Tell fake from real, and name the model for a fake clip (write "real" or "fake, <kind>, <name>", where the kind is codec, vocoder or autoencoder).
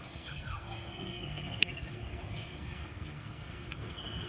fake, codec, SNAC